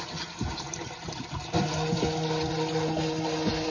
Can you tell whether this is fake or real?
real